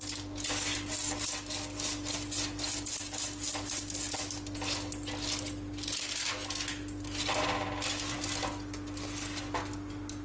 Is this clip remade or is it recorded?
recorded